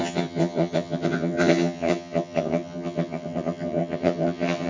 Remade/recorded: remade